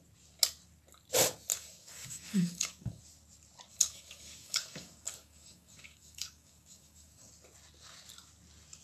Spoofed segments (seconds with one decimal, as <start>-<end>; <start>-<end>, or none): 1.5-3.0; 3.7-7.3